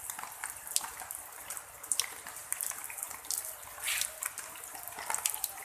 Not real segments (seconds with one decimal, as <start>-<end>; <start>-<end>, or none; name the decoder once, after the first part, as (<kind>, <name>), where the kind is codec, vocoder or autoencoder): none